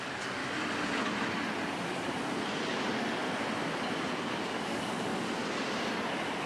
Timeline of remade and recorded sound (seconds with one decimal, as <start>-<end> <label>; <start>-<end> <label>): 0.0-0.4 remade; 0.4-4.3 recorded; 4.3-5.1 remade; 5.1-6.5 recorded